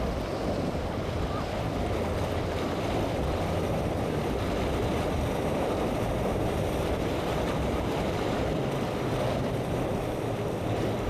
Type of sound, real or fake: fake